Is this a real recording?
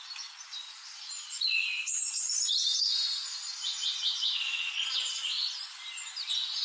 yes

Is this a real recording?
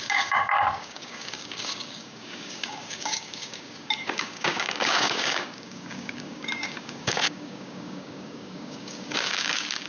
no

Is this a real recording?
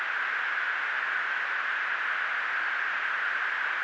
yes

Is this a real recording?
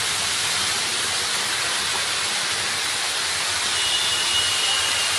yes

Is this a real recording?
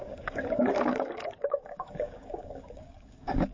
no